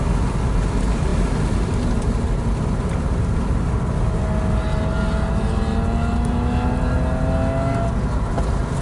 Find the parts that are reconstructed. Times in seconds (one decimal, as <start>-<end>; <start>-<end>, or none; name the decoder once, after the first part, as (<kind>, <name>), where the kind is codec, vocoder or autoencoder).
none